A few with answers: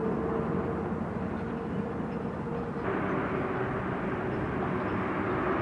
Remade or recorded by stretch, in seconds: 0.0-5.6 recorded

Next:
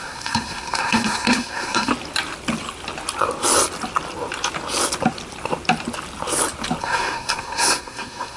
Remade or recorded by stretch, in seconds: 0.0-1.9 remade; 1.9-6.8 recorded; 6.8-8.4 remade